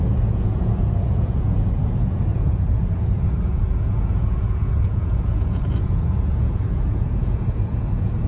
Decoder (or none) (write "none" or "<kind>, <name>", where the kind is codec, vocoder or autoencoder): vocoder, Vocos